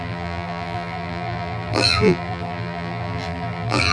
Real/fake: fake